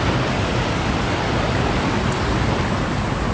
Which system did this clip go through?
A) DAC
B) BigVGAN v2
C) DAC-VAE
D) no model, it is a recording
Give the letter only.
D